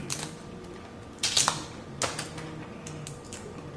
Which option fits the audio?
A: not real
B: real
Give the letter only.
B